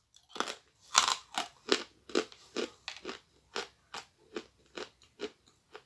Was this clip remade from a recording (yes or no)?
no